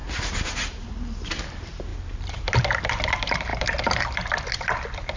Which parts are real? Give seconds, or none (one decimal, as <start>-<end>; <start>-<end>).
1.4-1.9; 2.6-3.5; 4.0-5.2